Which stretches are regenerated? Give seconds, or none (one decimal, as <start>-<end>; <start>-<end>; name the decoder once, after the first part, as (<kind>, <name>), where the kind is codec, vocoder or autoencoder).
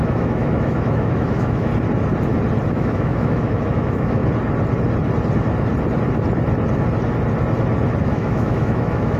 0.0-1.7 (autoencoder, DAC-VAE); 2.7-4.2; 8.0-9.2